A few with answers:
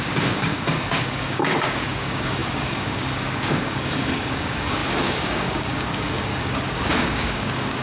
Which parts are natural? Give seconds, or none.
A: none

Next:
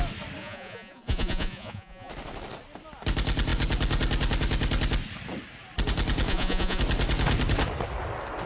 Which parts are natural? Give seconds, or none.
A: 0.0-0.4; 2.1-6.3; 6.8-8.5